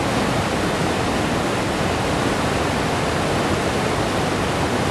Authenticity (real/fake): real